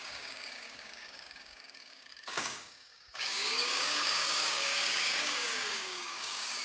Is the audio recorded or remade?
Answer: remade